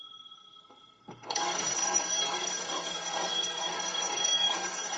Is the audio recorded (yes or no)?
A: no